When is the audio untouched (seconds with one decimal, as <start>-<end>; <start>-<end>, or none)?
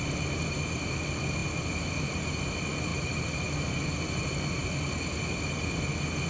0.0-6.3